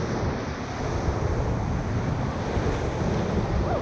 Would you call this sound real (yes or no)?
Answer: yes